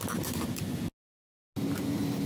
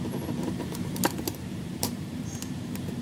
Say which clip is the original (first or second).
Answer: first